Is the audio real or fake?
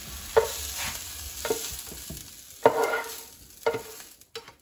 real